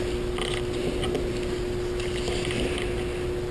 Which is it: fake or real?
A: real